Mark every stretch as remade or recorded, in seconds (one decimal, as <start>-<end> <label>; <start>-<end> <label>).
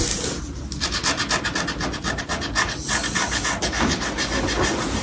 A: 0.0-5.0 recorded